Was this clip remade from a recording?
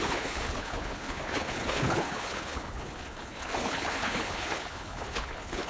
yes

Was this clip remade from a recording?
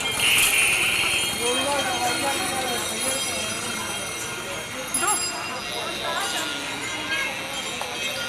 no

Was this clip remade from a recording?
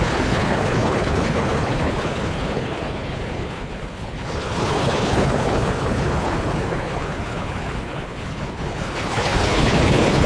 yes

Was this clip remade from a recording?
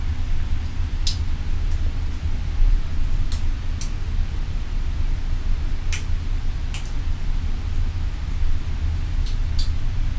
no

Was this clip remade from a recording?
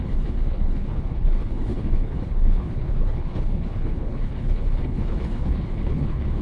yes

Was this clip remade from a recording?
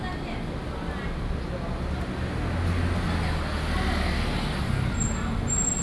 no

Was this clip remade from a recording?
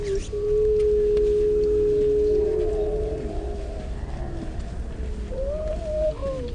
no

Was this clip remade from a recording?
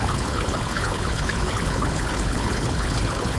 yes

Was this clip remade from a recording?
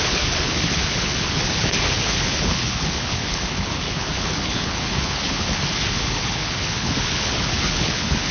yes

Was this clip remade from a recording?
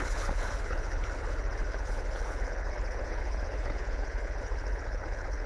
yes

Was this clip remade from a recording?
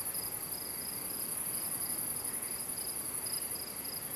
no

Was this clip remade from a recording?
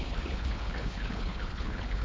yes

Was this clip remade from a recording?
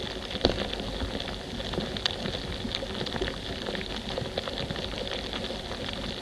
no